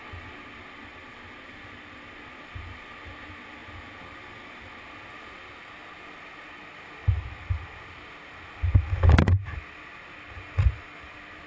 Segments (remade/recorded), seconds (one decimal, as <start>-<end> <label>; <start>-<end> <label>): 0.0-11.5 recorded